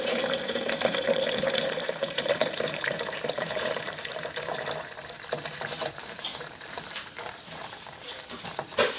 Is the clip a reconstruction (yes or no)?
yes